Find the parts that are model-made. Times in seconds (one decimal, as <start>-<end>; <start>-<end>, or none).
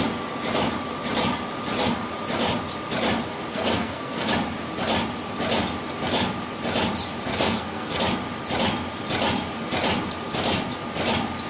3.5-4.3; 7.3-8.0